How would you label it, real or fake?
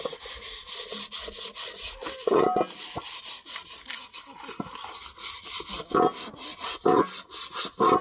real